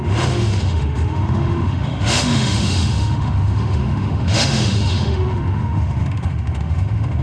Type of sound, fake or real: fake